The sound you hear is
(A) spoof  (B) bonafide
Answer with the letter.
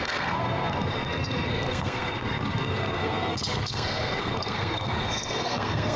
A